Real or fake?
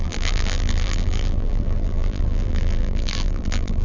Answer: fake